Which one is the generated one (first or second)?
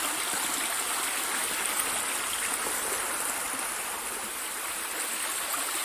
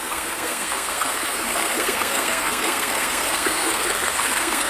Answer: second